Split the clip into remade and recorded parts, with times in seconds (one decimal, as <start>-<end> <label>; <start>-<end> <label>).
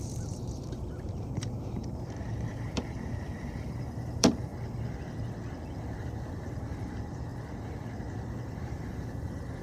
0.0-4.5 remade; 4.5-6.3 recorded; 6.3-7.3 remade; 7.3-8.4 recorded; 8.4-9.6 remade